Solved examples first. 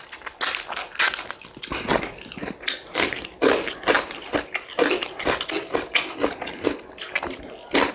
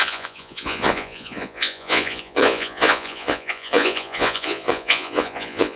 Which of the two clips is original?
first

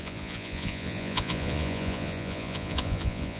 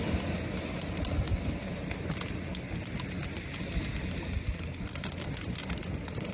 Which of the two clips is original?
second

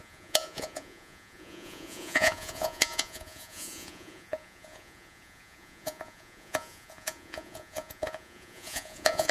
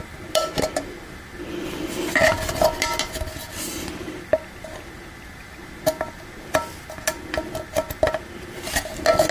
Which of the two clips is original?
second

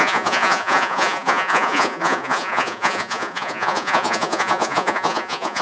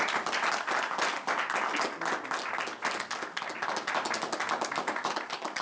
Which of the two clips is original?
second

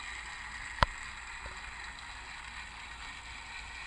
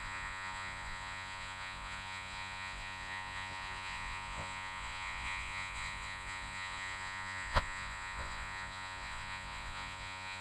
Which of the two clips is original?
first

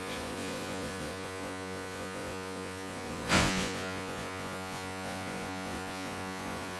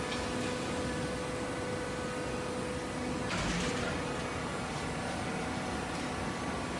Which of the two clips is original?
second